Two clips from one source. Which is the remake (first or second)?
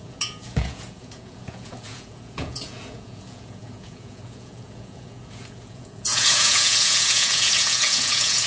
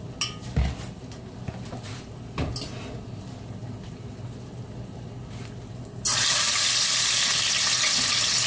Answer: first